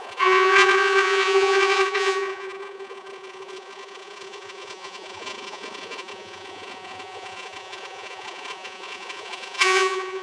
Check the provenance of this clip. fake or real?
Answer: fake